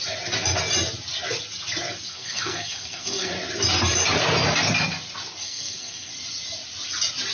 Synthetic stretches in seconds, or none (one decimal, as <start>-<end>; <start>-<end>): 2.1-3.3; 5.4-6.1